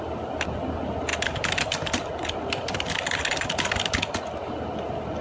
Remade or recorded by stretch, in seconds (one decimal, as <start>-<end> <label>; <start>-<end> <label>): 0.0-5.2 recorded